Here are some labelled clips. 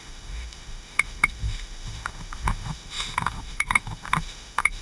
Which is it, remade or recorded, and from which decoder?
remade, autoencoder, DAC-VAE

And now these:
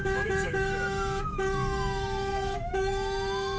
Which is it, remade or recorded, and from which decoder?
remade, autoencoder, DAC-VAE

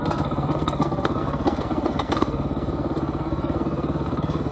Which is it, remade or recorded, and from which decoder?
remade, codec, SNAC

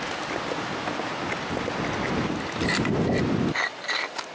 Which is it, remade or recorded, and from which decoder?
recorded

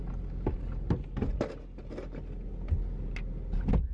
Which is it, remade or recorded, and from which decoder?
recorded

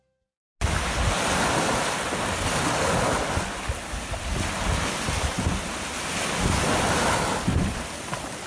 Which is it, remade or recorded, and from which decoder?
recorded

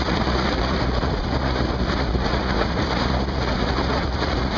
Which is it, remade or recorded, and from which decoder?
remade, vocoder, Vocos